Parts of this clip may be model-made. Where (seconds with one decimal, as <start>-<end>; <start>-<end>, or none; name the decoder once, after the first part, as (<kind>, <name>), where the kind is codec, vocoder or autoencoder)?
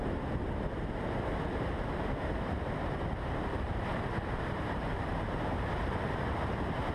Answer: 0.0-6.9 (vocoder, BigVGAN v2)